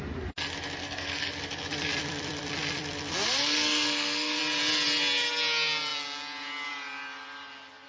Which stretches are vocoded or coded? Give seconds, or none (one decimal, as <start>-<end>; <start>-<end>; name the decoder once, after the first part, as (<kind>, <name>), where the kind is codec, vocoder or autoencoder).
0.8-1.4 (codec, SNAC); 3.4-4.4